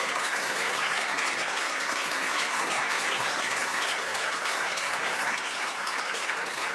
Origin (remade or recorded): remade